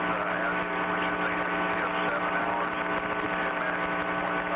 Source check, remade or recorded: recorded